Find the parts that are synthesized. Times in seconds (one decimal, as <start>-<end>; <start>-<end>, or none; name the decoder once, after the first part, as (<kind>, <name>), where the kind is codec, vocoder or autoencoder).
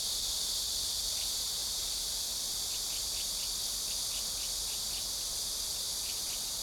none